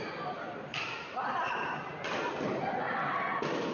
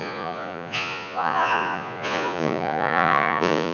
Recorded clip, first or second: first